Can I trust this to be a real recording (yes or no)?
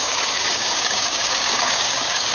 no